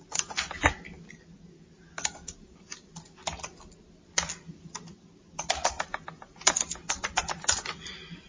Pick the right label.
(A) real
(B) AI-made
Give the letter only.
A